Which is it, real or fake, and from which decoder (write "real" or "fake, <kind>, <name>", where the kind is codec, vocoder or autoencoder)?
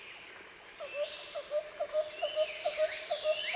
real